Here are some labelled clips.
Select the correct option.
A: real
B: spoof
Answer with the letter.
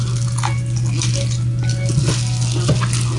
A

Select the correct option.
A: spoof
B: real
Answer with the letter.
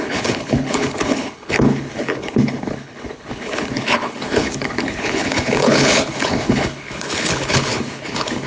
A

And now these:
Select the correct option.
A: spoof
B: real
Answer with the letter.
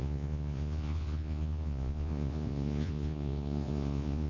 A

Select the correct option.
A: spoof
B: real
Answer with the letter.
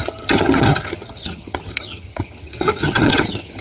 A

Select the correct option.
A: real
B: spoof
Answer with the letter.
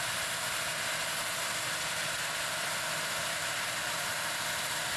A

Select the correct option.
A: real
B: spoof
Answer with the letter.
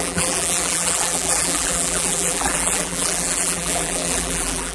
B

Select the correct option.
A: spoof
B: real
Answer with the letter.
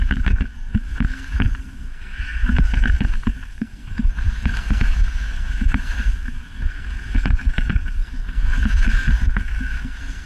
A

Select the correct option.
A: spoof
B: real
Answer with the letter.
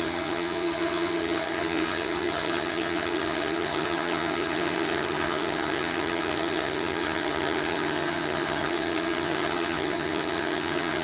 A